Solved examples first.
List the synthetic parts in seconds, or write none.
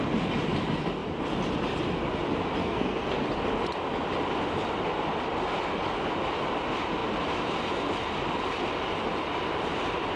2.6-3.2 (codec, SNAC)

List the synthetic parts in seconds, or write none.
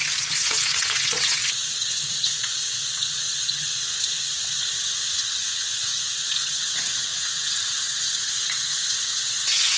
0.0-9.8 (vocoder, WaveNeXt)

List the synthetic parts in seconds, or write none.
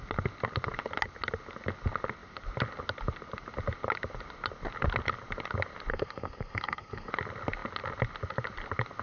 5.9-7.1 (codec, SNAC)